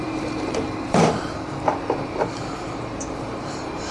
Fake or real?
fake